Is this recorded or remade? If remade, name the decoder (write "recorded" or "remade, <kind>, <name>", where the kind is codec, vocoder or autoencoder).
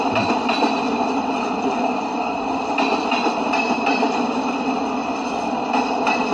remade, vocoder, BigVGAN v2